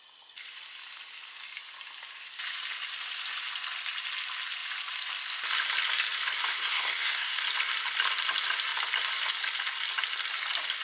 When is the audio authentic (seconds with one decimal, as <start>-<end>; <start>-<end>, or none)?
0.0-6.5; 7.4-10.8